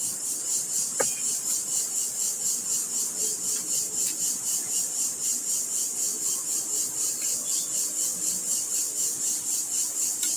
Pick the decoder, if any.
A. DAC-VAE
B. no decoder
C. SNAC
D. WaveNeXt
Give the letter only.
B